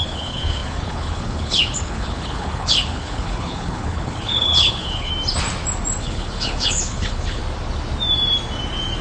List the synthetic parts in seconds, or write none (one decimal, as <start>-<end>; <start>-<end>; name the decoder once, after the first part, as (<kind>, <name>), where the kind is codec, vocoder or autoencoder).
0.0-5.1 (codec, HILCodec); 6.0-7.4